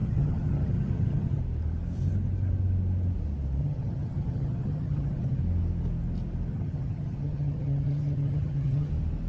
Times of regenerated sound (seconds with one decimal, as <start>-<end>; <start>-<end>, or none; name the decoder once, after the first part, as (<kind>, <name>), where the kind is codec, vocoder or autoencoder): 0.0-1.4 (vocoder, HiFi-GAN); 3.6-5.4; 6.5-8.9